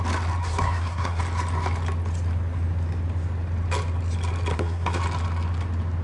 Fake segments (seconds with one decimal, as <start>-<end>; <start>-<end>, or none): 0.4-1.2; 4.5-5.0